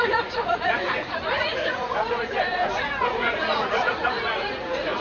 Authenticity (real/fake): fake